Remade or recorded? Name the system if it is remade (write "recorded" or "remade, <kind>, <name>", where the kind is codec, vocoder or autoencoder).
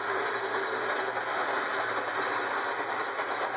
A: recorded